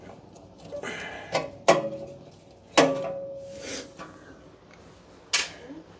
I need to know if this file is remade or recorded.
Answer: recorded